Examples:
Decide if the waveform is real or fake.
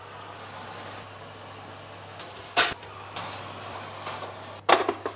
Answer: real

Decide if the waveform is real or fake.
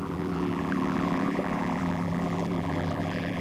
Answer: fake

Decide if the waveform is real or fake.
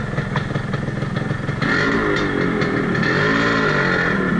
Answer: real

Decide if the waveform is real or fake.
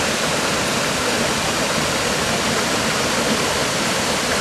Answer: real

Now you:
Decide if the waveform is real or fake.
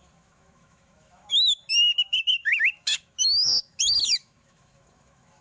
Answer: fake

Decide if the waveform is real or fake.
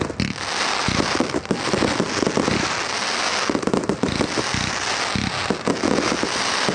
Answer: real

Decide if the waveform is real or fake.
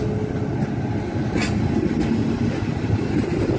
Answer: real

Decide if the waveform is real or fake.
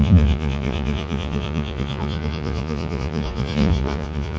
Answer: fake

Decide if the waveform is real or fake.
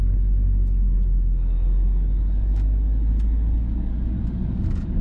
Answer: fake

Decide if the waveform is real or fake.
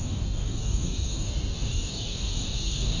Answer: fake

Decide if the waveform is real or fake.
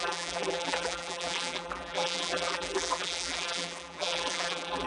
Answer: fake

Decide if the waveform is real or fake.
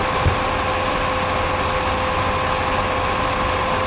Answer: real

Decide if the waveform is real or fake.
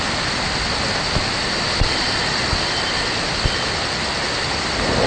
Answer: real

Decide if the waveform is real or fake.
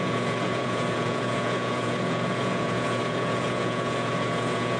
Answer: fake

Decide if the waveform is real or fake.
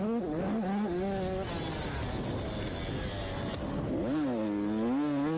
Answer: real